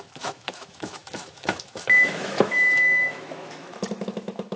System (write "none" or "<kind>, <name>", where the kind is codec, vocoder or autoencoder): autoencoder, DAC-VAE